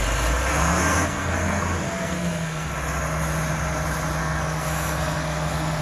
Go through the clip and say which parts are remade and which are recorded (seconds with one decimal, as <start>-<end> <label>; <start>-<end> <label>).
0.0-0.5 recorded; 0.5-2.7 remade; 2.7-4.2 recorded; 4.2-5.8 remade